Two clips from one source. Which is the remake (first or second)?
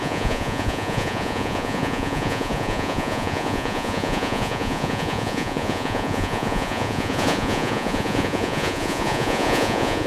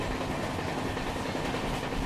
first